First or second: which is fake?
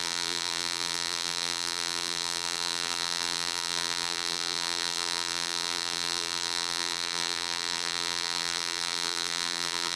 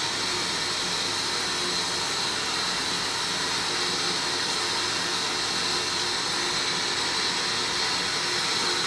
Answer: first